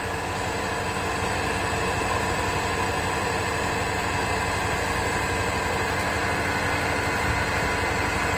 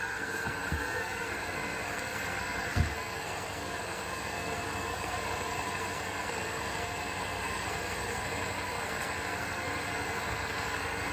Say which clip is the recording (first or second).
first